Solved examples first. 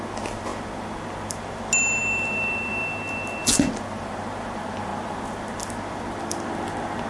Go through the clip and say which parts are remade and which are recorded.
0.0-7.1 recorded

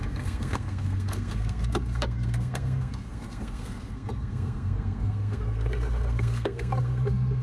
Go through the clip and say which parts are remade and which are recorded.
0.0-7.4 remade